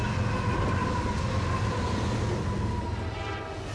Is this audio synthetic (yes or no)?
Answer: no